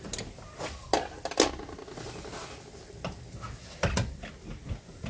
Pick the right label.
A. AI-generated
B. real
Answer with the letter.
B